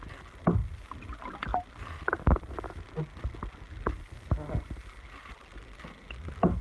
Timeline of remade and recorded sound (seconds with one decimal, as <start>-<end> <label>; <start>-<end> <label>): 0.0-6.6 recorded